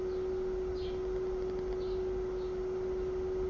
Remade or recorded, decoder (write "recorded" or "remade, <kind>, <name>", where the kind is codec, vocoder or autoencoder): recorded